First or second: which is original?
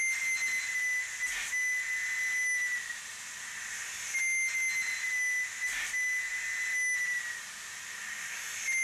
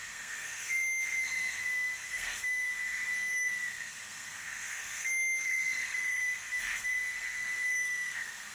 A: first